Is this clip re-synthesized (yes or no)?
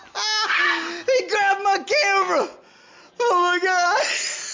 no